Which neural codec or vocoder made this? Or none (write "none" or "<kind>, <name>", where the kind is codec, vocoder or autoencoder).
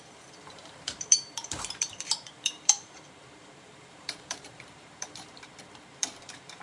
vocoder, BigVGAN v2